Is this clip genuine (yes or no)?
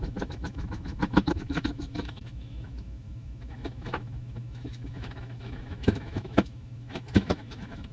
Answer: no